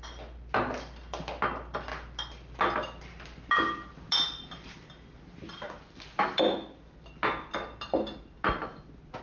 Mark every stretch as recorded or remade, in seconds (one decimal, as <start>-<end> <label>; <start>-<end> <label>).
0.0-9.2 recorded